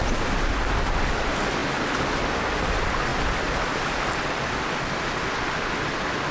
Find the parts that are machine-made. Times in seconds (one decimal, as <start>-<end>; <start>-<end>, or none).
none